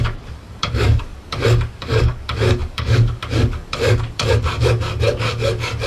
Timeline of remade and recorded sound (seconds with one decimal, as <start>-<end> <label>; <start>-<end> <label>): 0.0-5.9 remade